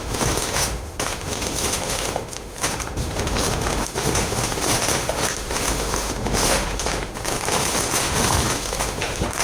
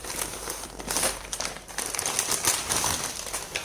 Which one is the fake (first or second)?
first